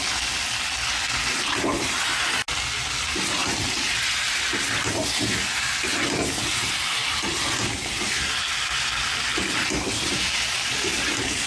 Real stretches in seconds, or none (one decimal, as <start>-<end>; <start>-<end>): 0.0-11.5